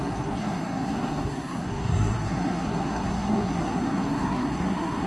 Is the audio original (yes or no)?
no